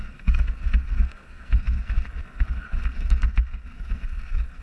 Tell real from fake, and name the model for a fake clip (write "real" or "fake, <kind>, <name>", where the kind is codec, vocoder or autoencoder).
fake, codec, SNAC